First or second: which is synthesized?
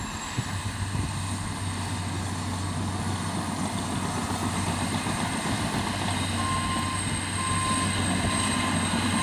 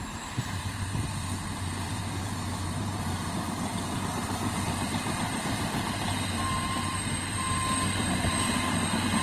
second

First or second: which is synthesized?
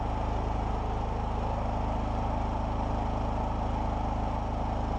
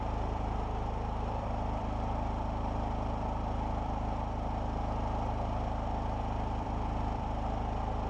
second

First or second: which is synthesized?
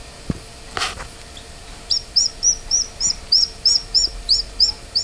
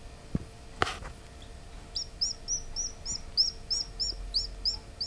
first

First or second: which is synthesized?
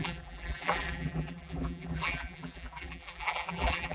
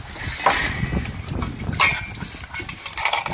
first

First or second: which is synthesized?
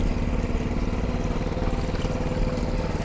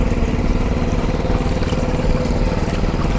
second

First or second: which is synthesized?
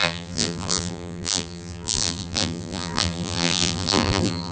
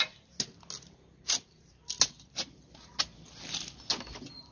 first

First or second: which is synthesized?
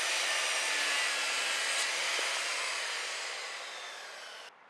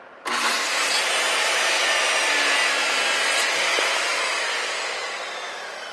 first